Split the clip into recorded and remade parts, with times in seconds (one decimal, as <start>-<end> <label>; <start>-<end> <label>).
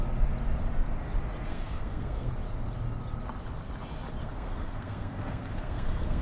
0.0-1.5 recorded; 1.5-2.3 remade; 2.3-4.2 recorded; 4.2-6.2 remade